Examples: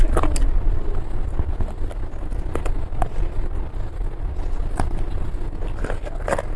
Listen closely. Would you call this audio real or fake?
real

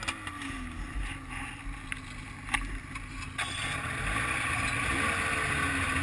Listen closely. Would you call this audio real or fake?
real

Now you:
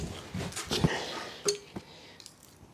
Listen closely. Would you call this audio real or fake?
real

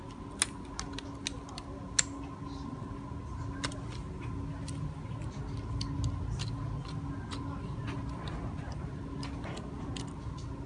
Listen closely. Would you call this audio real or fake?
real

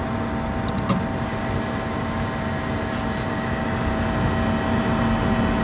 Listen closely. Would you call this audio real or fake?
real